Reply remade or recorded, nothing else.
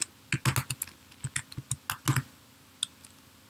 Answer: recorded